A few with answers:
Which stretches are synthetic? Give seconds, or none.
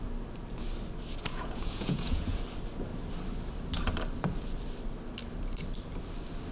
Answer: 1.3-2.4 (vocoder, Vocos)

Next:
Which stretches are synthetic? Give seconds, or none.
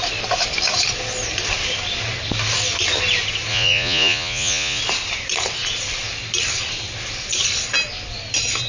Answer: 3.5-4.8 (vocoder, Vocos)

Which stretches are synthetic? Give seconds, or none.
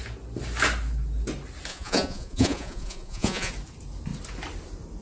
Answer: 1.7-3.5 (vocoder, Vocos)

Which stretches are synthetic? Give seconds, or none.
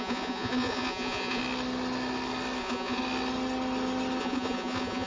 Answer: 0.0-1.4 (vocoder, Vocos); 2.6-3.0; 4.2-5.1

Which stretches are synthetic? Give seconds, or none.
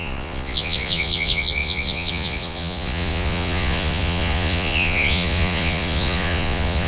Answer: 0.0-6.9 (vocoder, Vocos)